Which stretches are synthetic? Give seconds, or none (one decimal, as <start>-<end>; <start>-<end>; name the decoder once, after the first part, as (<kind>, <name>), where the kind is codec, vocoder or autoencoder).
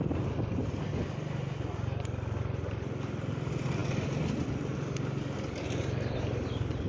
0.6-2.0 (vocoder, BigVGAN v2); 3.8-4.5